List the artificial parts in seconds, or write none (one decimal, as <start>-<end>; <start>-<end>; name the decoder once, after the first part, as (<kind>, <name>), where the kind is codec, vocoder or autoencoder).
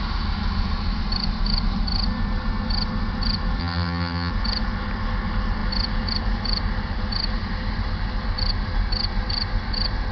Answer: 3.6-4.3 (vocoder, HiFi-GAN)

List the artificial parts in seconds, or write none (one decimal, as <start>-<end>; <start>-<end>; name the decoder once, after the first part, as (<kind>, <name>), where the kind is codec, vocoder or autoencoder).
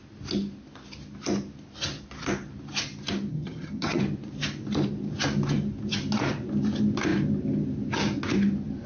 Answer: 3.3-4.0 (vocoder, HiFi-GAN)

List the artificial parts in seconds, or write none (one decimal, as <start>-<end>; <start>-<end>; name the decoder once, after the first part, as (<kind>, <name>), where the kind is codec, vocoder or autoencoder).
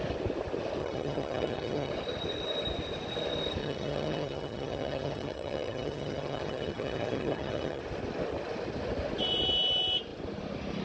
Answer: 0.8-1.9 (vocoder, HiFi-GAN); 3.6-7.8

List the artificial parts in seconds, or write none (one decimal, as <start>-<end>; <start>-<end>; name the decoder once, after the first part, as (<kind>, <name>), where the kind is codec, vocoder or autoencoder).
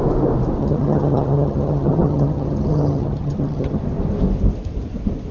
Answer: 0.6-3.8 (vocoder, HiFi-GAN)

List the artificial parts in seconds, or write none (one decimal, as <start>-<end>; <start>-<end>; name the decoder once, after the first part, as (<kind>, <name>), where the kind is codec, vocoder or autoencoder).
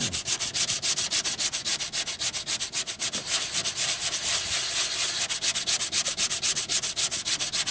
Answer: none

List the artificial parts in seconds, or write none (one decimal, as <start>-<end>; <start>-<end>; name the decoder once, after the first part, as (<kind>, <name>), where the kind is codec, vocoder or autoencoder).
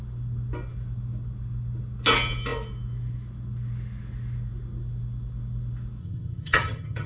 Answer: 6.0-7.1 (vocoder, HiFi-GAN)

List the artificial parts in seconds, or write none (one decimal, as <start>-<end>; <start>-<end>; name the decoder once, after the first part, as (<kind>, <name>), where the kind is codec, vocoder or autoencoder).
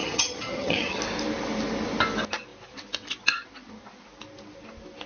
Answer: 0.0-1.0 (vocoder, HiFi-GAN)